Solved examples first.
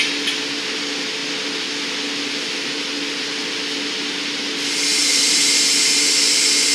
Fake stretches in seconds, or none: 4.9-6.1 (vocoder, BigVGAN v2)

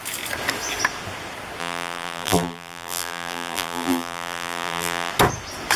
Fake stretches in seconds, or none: 1.6-5.1 (vocoder, BigVGAN v2)

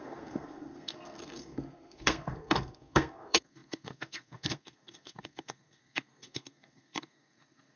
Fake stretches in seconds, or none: 0.0-7.8 (codec, SNAC)

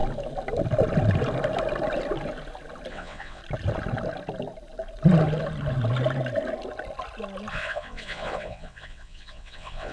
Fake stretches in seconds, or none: 2.9-3.4 (vocoder, WaveNeXt); 7.5-9.9

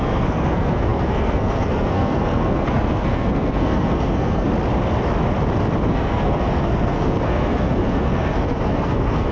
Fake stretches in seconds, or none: 0.0-4.5 (codec, SNAC); 5.9-9.3

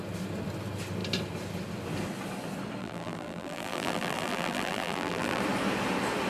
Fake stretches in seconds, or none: 2.8-5.4 (vocoder, BigVGAN v2)

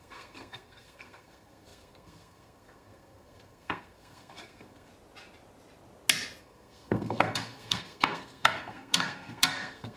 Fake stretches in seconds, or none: 0.0-4.9 (codec, SNAC); 6.4-10.0

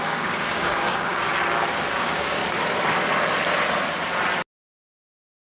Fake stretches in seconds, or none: 0.0-1.3 (codec, DAC); 1.9-2.4